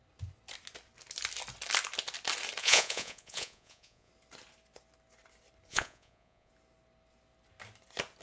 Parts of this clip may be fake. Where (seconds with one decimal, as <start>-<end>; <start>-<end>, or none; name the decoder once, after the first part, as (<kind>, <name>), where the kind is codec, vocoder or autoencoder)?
2.6-4.1 (vocoder, Vocos); 5.7-6.5